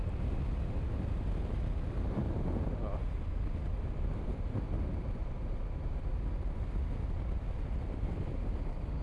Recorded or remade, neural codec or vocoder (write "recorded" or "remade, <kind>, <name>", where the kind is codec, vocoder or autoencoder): recorded